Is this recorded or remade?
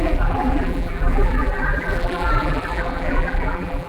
remade